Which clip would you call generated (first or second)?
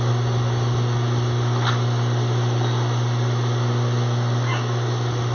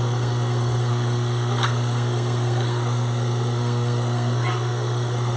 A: second